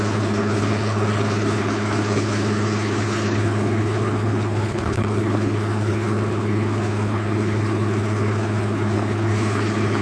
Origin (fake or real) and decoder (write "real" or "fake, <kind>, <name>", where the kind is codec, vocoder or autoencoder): fake, codec, HILCodec